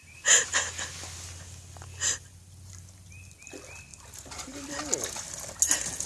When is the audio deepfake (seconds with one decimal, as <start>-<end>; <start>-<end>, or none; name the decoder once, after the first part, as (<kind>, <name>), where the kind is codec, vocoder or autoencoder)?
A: none

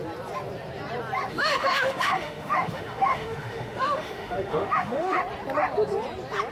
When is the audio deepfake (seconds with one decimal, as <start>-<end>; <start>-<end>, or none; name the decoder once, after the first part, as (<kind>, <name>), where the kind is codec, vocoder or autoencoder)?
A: 1.3-5.2 (autoencoder, DAC-VAE)

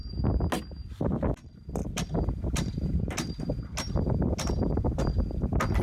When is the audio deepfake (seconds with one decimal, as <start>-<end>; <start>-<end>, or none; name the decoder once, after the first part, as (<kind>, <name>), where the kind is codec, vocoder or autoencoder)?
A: none